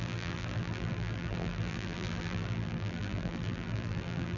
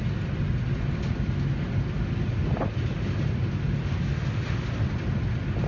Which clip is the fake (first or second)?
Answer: first